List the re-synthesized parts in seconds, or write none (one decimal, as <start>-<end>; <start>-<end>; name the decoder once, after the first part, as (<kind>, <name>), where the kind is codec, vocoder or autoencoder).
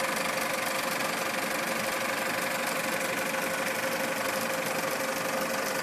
none